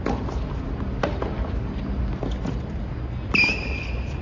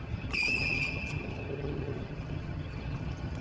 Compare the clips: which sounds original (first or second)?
first